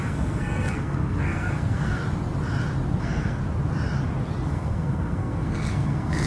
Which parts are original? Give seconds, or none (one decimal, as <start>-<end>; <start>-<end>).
2.0-3.0; 3.4-4.5